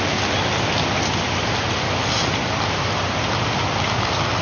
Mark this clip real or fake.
real